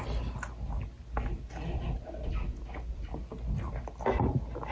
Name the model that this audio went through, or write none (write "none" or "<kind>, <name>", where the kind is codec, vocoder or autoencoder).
none